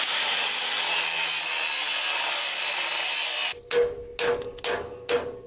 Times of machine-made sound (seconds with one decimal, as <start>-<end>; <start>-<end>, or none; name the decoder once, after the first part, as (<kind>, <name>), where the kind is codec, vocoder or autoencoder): none